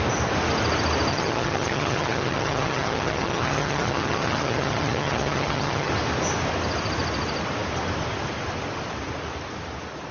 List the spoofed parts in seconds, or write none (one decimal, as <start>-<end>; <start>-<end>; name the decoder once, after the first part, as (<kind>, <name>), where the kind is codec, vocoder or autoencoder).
1.1-5.9 (vocoder, HiFi-GAN)